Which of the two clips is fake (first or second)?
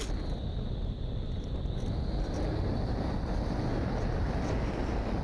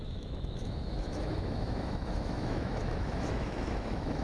second